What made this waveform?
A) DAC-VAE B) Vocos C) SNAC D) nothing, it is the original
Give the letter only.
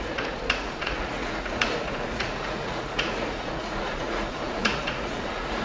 B